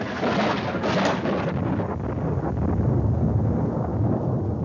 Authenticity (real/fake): real